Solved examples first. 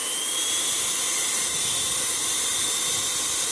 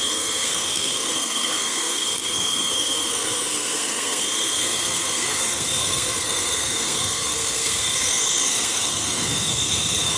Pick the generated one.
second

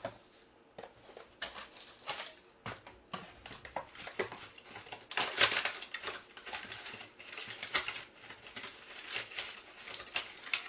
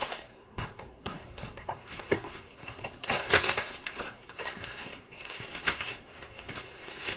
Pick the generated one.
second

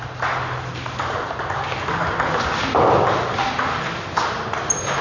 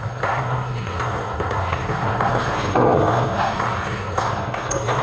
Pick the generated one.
second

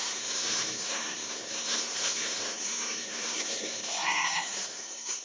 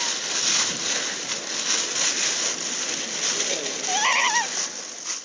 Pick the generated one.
first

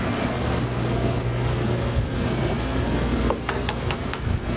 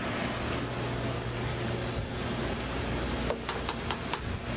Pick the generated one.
first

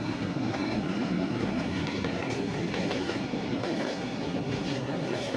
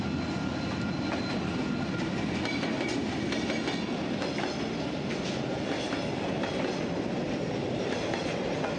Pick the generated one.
first